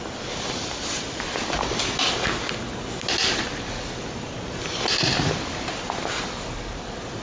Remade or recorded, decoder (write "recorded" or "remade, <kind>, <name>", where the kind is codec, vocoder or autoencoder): recorded